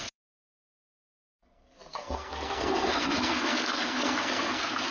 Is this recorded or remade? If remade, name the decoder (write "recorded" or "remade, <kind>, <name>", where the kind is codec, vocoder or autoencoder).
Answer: remade, codec, SNAC